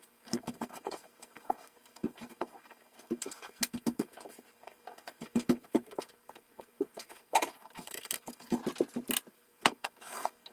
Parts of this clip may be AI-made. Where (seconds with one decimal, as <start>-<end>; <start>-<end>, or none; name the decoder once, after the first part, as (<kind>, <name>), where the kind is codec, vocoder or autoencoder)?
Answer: 0.0-8.6 (codec, SNAC); 9.3-10.5